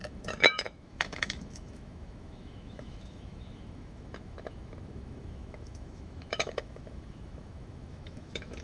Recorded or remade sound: remade